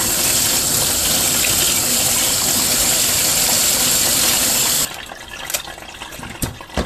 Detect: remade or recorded recorded